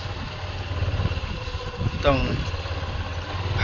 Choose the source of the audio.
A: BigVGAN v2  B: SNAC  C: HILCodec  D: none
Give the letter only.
D